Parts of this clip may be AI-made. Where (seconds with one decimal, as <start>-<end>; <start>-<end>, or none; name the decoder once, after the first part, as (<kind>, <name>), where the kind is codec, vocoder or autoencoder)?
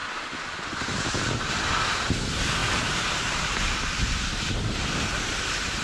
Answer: none